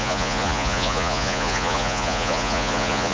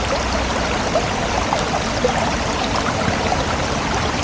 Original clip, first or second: second